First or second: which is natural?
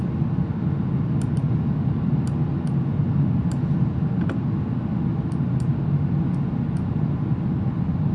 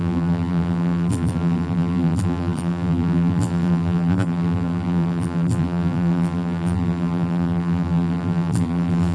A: first